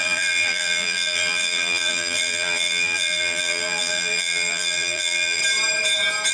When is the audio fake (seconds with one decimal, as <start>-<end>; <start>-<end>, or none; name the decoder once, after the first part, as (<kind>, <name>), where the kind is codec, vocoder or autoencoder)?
0.0-5.4 (vocoder, BigVGAN v2)